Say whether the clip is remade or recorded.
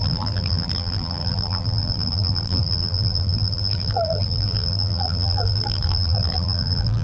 remade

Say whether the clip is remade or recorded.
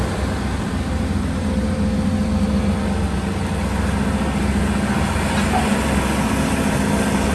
recorded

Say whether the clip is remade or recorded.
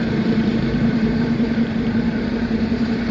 remade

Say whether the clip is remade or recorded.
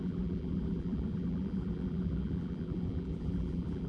remade